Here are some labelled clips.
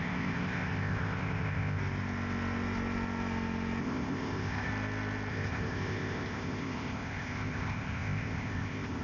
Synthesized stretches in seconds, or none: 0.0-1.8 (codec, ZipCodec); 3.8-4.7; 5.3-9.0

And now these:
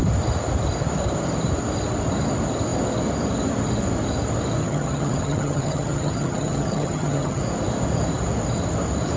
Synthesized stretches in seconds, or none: 4.6-7.4 (vocoder, HiFi-GAN)

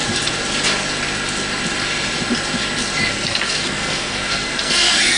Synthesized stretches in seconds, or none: 3.1-5.2 (codec, SNAC)